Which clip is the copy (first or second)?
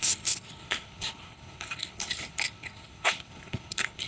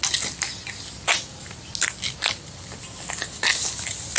first